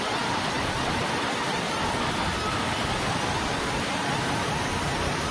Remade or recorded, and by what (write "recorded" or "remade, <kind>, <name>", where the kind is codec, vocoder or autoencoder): recorded